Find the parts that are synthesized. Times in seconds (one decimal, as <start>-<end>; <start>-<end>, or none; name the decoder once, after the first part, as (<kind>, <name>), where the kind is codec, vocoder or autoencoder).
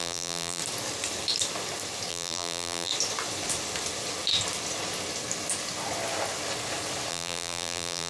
0.0-0.6 (vocoder, BigVGAN v2); 2.1-2.9; 7.1-8.1